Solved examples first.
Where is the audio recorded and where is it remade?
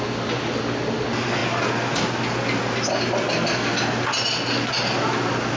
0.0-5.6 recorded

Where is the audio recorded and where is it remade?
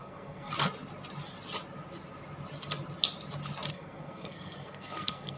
0.0-0.5 remade; 0.5-3.7 recorded; 3.7-5.4 remade